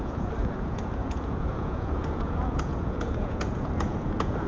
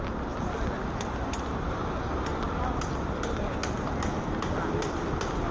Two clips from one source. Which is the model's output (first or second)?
first